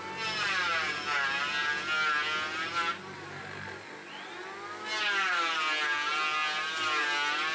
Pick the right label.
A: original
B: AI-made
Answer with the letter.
A